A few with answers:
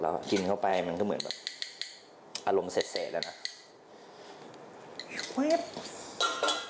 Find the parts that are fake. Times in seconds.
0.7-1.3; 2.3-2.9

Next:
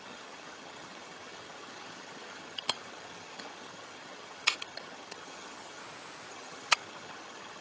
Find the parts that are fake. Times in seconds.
0.0-5.8; 6.3-7.6

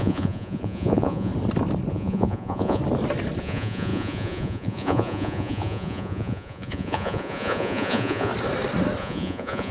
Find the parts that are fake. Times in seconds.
0.0-1.3; 1.9-2.8; 3.4-8.3; 9.0-9.7

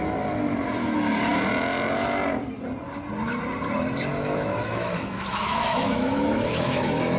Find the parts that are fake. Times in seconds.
4.1-7.2